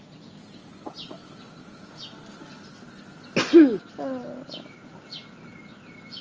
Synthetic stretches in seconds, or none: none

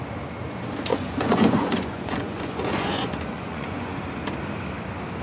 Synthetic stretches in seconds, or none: 0.9-4.0 (vocoder, Vocos)

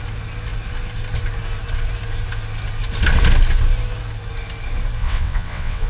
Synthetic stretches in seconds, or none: 5.0-5.9 (vocoder, WaveNeXt)

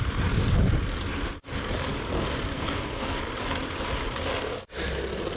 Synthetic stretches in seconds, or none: 2.5-3.2 (codec, SNAC)